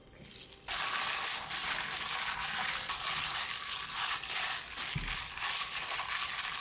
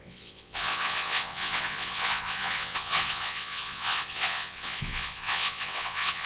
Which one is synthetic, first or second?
second